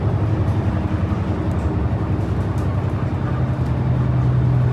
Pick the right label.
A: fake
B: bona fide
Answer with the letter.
B